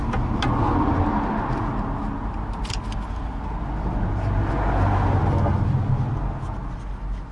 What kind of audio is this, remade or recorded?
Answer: recorded